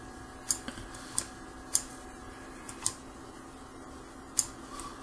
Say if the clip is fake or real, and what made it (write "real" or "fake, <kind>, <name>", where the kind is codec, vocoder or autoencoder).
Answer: real